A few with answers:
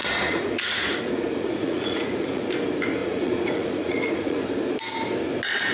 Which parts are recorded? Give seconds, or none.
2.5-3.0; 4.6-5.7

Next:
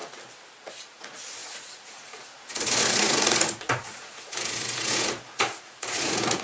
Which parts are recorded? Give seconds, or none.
0.0-0.7

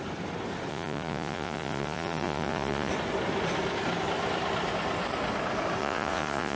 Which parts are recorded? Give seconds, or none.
0.0-0.7; 2.9-5.8

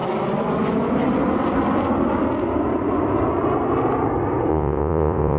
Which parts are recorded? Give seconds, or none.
0.0-4.5

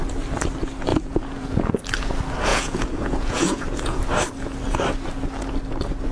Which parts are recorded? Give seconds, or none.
0.0-0.9; 1.7-2.5; 4.0-6.1

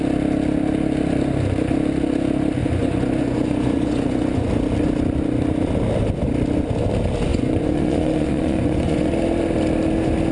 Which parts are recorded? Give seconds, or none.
0.0-2.6; 4.5-7.3; 9.1-10.3

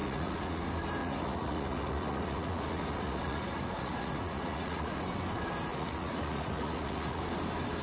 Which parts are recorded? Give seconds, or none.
0.6-1.0; 5.0-5.7; 7.2-7.8

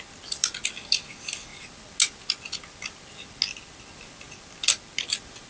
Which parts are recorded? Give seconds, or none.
0.0-5.5